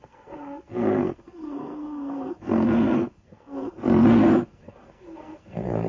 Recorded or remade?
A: remade